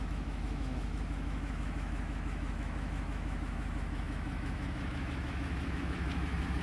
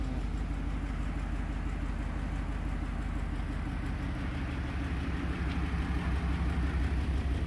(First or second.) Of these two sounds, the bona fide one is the second